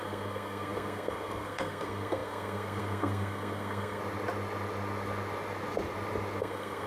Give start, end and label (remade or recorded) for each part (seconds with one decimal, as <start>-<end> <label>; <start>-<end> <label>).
0.0-4.0 remade; 4.0-6.4 recorded; 6.4-6.9 remade